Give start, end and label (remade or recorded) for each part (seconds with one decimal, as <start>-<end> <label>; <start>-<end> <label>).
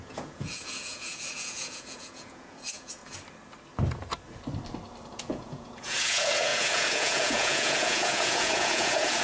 0.0-3.0 remade; 3.0-5.1 recorded; 5.1-9.2 remade